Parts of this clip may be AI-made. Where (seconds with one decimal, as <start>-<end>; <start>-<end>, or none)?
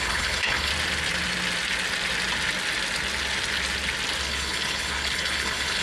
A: 0.0-0.7; 4.2-5.8